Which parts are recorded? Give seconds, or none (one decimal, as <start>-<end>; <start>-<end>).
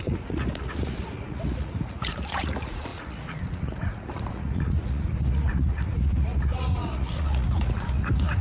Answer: none